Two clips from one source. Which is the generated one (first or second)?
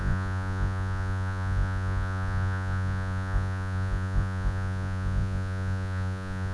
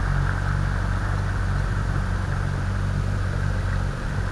first